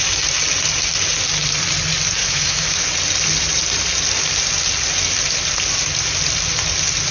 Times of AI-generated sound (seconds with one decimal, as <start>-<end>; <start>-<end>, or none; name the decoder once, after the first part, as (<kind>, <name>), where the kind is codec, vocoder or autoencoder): 2.2-2.8 (autoencoder, DAC-VAE)